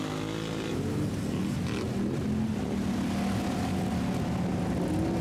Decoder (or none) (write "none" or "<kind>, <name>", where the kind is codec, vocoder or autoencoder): none